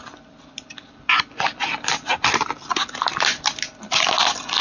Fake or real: real